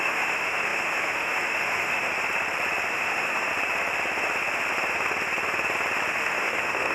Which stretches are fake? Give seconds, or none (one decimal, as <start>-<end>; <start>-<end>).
0.0-2.1; 2.9-3.5; 6.1-6.9